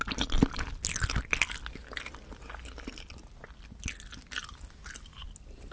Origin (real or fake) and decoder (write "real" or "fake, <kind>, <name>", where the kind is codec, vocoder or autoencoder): real